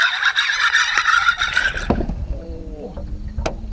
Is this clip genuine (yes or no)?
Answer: yes